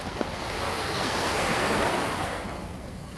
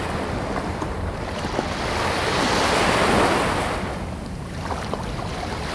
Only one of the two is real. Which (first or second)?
second